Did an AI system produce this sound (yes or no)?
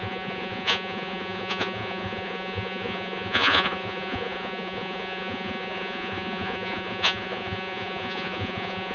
yes